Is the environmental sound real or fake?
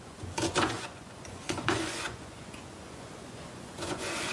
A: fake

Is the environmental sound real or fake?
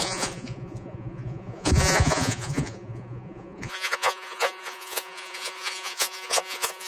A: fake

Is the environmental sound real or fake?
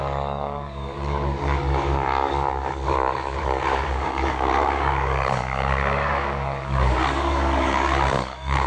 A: fake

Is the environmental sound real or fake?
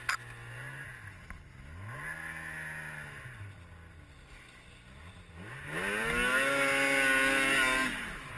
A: real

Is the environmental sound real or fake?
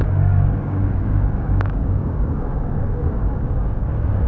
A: fake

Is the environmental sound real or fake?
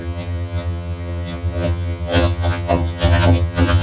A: fake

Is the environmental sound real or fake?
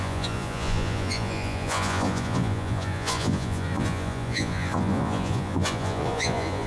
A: fake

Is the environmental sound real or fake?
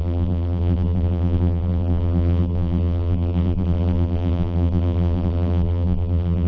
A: fake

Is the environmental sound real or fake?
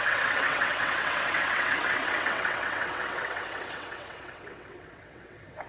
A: fake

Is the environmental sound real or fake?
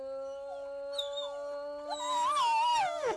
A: real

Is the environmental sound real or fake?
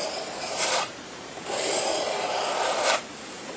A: fake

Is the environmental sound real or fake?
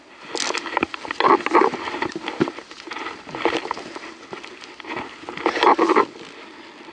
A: real